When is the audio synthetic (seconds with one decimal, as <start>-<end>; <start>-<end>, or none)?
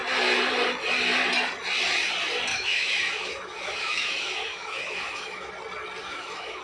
2.5-5.5; 6.0-6.6